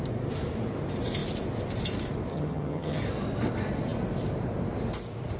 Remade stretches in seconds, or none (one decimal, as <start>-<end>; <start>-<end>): 2.3-3.0